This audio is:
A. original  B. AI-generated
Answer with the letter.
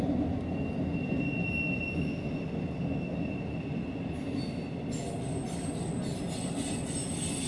A